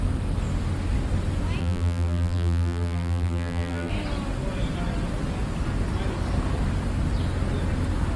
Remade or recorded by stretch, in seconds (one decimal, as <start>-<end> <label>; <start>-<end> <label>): 0.0-1.6 recorded; 1.6-3.9 remade; 3.9-8.2 recorded